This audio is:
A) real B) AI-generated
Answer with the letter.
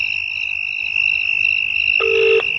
A